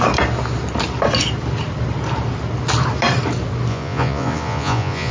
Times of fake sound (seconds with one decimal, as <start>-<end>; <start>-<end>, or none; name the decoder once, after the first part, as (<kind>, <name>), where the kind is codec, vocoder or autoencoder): 3.7-5.1 (vocoder, Vocos)